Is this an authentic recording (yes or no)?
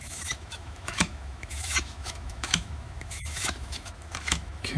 no